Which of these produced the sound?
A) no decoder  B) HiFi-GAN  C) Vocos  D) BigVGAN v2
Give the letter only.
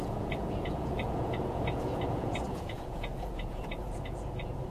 C